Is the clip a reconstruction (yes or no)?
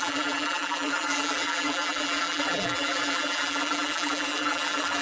yes